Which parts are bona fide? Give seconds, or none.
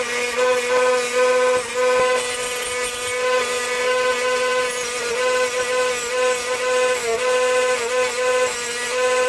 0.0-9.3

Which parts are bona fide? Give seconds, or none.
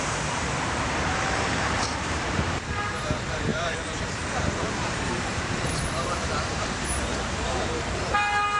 none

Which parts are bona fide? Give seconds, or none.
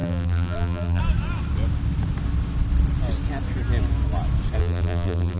1.0-4.6